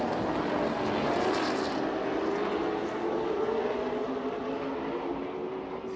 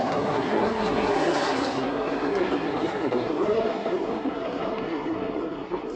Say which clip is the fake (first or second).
second